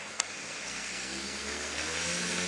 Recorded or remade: remade